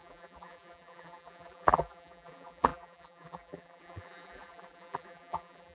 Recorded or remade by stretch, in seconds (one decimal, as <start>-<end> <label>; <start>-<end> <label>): 0.0-5.7 remade